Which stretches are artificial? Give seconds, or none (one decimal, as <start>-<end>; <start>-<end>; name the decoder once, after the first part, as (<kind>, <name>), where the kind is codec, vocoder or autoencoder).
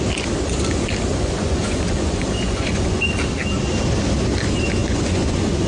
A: 1.1-3.0 (vocoder, Vocos); 4.8-5.7